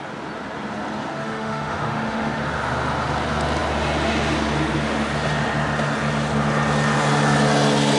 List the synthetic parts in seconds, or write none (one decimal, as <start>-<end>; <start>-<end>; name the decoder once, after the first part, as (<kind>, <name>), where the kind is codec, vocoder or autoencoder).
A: 1.2-2.4 (autoencoder, DAC-VAE)